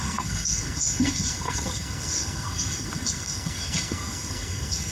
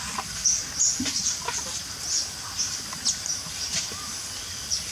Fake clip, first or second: first